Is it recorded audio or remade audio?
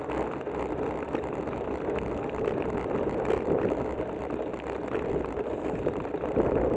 recorded